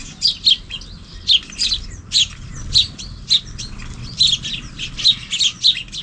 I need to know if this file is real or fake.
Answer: real